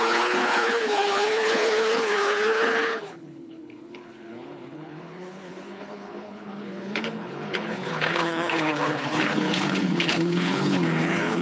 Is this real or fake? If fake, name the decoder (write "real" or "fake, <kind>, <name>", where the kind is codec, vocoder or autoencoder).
fake, codec, HILCodec